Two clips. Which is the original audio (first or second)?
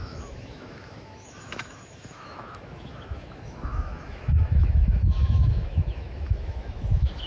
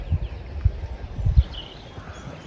second